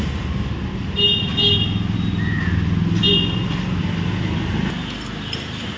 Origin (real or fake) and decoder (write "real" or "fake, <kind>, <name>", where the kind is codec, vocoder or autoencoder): real